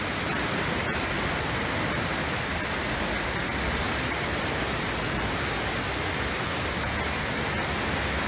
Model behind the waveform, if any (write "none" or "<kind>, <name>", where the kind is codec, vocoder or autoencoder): none